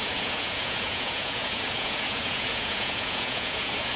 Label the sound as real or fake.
fake